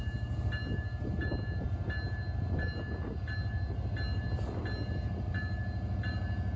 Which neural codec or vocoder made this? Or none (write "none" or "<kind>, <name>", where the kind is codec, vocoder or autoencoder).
none